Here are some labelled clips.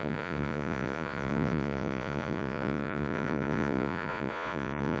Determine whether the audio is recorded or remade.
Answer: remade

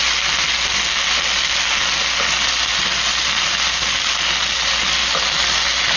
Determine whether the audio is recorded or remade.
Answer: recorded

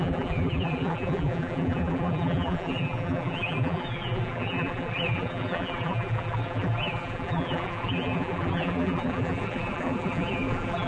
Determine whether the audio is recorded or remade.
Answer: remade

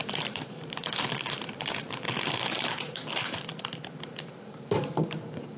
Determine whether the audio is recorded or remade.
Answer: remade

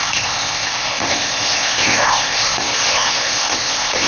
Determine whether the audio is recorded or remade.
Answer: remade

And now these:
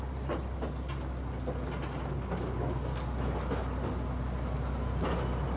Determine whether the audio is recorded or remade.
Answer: recorded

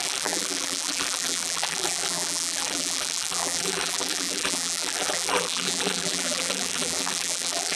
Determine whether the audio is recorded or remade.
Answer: remade